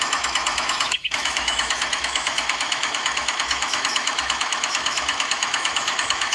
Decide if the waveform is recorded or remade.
remade